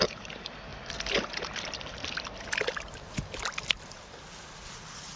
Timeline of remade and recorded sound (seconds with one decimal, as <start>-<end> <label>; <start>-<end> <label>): 0.0-0.7 remade; 0.7-3.8 recorded; 3.8-5.2 remade